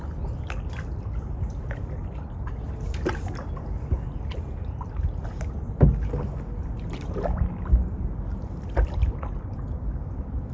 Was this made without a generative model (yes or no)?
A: yes